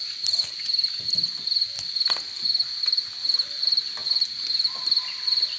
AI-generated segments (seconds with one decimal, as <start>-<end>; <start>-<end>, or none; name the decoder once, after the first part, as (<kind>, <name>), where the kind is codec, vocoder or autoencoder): none